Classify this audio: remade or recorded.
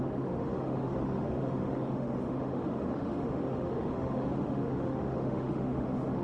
remade